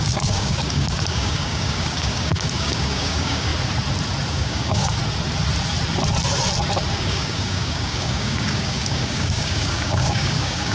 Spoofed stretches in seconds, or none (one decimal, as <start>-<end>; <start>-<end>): 0.0-3.5; 4.3-5.0; 6.9-10.7